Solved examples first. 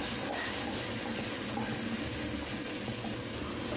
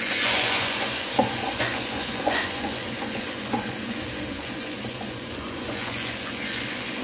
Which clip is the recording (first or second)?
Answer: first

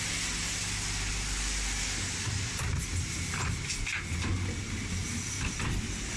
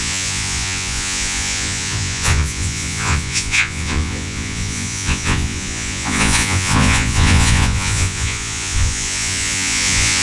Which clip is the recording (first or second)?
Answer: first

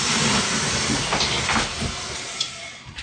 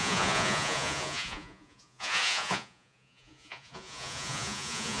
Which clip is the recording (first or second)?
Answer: first